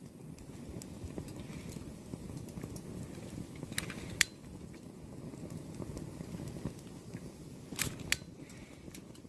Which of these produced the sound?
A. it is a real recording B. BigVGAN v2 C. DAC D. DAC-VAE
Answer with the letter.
A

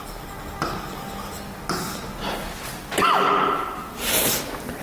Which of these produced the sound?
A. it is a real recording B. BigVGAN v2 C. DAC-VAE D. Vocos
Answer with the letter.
A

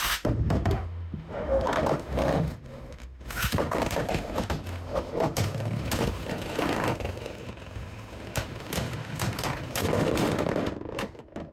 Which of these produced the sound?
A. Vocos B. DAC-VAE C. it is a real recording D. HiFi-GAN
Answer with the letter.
B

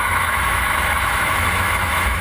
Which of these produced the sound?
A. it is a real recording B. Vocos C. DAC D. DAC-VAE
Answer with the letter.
D